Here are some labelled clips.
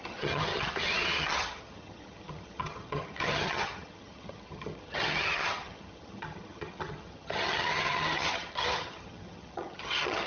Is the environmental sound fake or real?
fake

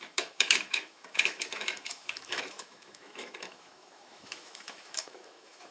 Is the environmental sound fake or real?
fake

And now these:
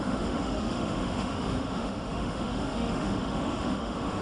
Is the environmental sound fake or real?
fake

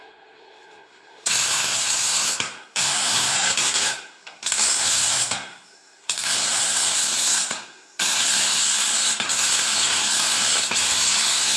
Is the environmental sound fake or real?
fake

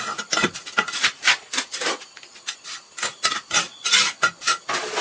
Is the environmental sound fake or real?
real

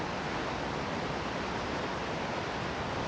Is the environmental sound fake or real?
real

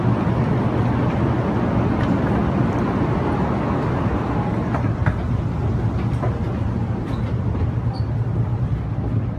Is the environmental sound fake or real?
real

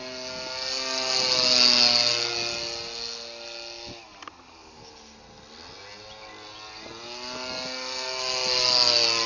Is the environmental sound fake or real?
real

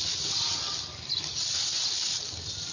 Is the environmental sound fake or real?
real